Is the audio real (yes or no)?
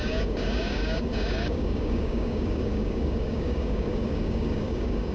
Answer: no